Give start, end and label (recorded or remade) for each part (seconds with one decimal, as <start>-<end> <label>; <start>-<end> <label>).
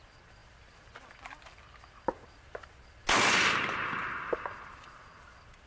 0.0-5.7 recorded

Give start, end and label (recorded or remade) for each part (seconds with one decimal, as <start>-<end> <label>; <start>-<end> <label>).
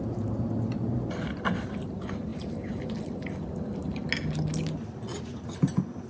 0.0-2.3 recorded; 2.3-2.9 remade; 2.9-6.1 recorded